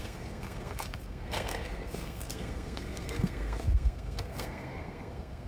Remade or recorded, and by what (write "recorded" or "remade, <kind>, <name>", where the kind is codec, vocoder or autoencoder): remade, codec, SNAC